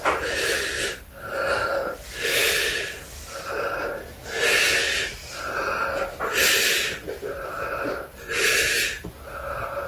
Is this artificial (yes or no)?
no